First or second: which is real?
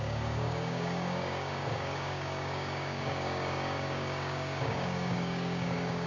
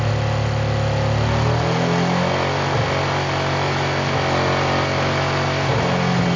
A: second